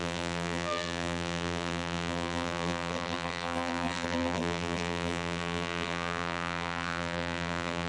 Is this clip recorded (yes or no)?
no